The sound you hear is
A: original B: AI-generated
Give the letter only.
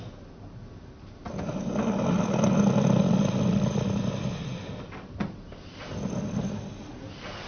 A